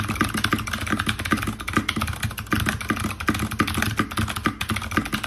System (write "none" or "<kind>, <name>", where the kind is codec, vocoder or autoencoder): none